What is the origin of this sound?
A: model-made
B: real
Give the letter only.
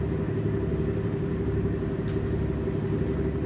B